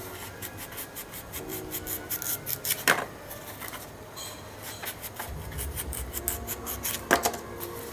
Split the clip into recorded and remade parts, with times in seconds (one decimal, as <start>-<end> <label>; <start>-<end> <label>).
0.0-1.5 recorded; 1.5-6.2 remade; 6.2-7.9 recorded